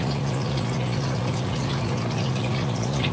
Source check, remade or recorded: remade